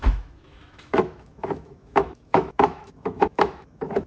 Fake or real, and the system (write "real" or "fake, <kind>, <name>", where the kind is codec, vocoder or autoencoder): fake, autoencoder, DAC-VAE